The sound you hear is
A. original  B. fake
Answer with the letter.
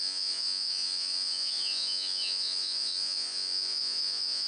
B